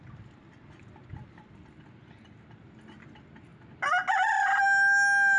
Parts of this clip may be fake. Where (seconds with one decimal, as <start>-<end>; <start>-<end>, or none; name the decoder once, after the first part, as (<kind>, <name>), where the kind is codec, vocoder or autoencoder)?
none

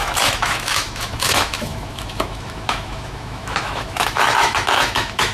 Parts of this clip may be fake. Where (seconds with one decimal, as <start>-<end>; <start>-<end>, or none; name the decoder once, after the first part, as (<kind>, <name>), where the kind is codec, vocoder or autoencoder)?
0.0-5.3 (autoencoder, DAC-VAE)

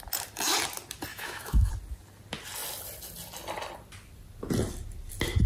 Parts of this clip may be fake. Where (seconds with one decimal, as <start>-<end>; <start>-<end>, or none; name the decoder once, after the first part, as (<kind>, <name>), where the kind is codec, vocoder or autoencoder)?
1.1-1.7 (autoencoder, DAC-VAE)

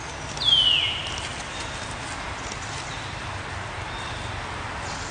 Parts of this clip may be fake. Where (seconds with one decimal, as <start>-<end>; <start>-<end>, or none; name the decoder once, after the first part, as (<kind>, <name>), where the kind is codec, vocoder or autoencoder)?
none

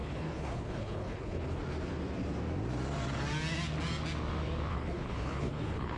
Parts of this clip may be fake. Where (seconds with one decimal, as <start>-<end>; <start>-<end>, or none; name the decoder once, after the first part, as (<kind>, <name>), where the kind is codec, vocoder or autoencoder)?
0.0-1.6 (codec, HILCodec); 4.7-6.0

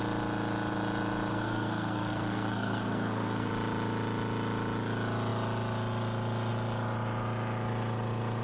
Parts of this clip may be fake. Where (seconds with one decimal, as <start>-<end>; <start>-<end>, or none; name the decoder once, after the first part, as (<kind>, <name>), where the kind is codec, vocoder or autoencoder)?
1.3-3.5 (codec, SNAC)

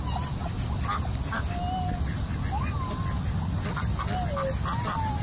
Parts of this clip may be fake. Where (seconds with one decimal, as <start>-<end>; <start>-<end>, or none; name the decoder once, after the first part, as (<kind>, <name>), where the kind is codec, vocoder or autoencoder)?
none

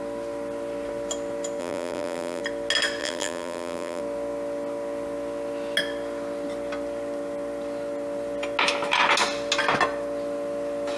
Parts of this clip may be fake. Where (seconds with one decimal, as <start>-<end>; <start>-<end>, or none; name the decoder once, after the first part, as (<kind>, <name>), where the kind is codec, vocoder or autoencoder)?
1.6-2.4 (vocoder, BigVGAN v2); 3.0-4.0